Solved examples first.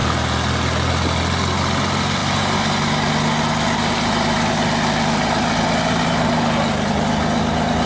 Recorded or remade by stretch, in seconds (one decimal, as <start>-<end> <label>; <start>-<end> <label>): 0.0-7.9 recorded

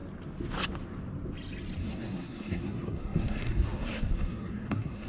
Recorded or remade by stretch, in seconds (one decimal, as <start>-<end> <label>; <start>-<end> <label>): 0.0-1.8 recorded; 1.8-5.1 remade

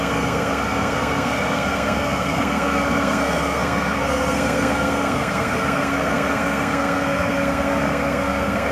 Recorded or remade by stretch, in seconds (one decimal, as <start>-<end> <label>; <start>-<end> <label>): 0.0-8.7 remade

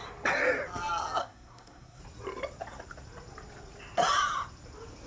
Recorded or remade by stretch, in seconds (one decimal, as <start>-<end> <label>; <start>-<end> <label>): 0.0-1.2 recorded; 1.2-2.0 remade; 2.0-5.1 recorded